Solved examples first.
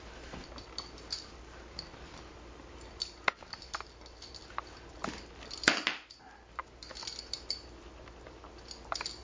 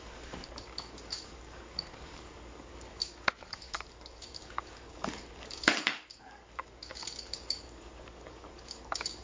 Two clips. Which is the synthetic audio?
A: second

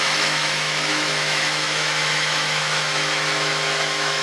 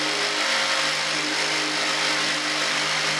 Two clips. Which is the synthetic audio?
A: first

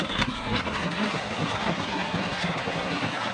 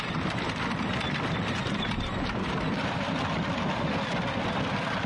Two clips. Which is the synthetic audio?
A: first